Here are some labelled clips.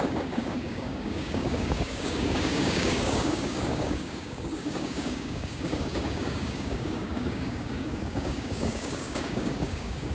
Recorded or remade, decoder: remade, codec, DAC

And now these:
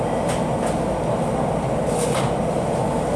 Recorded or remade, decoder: recorded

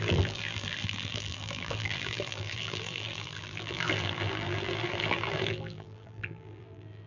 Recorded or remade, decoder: remade, vocoder, BigVGAN v2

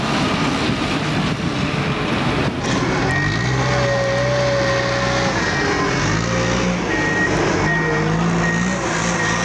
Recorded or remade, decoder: recorded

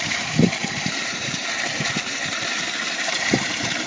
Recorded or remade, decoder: remade, vocoder, BigVGAN v2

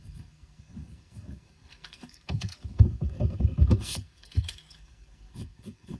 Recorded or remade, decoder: remade, codec, SNAC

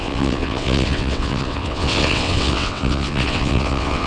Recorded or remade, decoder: remade, vocoder, WaveNeXt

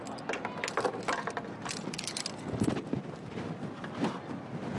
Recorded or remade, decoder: recorded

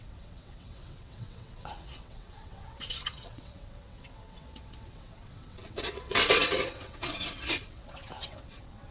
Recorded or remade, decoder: remade, vocoder, WaveNeXt